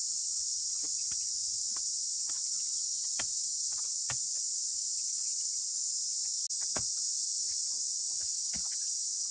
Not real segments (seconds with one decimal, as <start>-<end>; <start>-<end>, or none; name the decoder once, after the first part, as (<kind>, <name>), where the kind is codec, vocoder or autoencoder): none